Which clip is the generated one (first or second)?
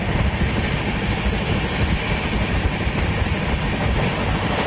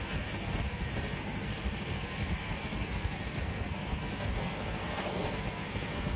second